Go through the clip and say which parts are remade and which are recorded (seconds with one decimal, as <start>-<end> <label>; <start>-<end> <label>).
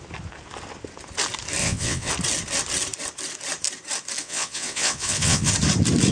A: 0.0-1.6 recorded; 1.6-2.1 remade; 2.1-4.2 recorded; 4.2-5.5 remade; 5.5-6.1 recorded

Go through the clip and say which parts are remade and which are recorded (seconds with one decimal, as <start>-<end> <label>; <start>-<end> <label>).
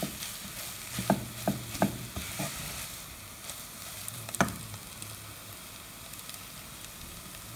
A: 0.0-7.6 recorded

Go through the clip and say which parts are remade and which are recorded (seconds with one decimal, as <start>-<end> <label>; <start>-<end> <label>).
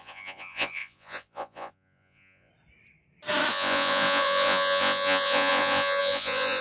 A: 0.0-2.5 remade; 2.5-3.5 recorded; 3.5-6.6 remade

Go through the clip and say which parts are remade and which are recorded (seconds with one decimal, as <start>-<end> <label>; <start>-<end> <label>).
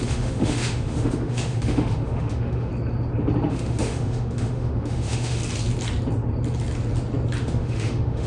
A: 0.0-2.7 remade; 2.7-3.5 recorded; 3.5-5.4 remade; 5.4-7.4 recorded; 7.4-8.3 remade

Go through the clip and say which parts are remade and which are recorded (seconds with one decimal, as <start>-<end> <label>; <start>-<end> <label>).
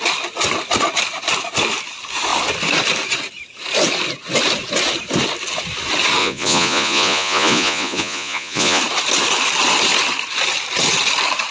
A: 0.0-6.2 recorded; 6.2-8.8 remade; 8.8-11.5 recorded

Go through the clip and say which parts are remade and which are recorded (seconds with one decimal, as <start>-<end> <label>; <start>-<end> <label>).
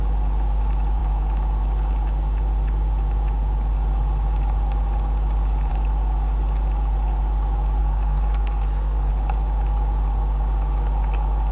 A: 0.0-7.8 recorded; 7.8-9.1 remade; 9.1-11.5 recorded